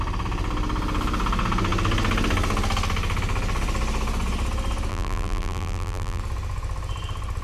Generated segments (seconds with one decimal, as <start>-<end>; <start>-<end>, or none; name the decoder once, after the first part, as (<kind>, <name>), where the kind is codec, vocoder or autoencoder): 4.9-6.2 (vocoder, BigVGAN v2)